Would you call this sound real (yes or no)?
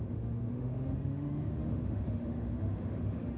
no